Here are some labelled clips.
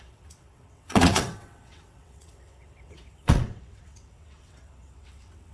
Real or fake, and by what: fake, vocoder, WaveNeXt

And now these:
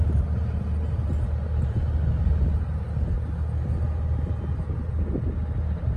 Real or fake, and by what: real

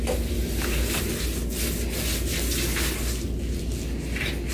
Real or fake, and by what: real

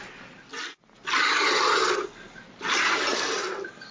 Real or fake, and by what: real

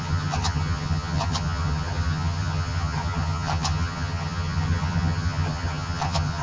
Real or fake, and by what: fake, vocoder, HiFi-GAN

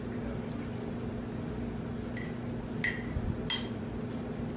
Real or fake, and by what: real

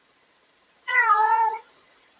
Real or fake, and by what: fake, vocoder, Vocos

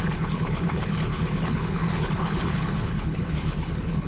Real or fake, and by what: fake, codec, HILCodec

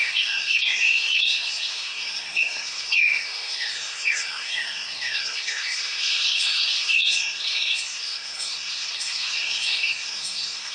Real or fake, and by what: fake, codec, SNAC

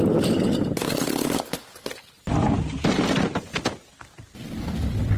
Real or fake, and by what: real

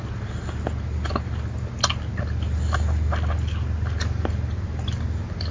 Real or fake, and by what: real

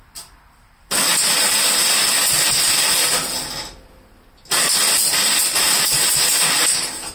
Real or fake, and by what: real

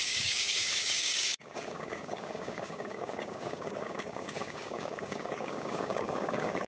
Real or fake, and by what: fake, codec, DAC